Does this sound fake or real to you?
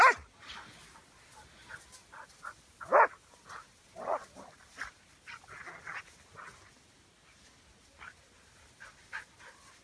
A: real